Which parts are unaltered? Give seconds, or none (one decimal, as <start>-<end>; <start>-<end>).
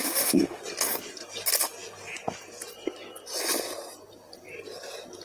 0.6-5.2